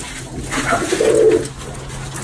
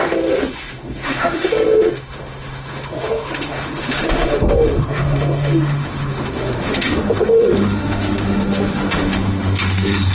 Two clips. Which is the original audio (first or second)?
first